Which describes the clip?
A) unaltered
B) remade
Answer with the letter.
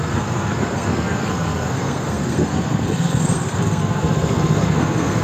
B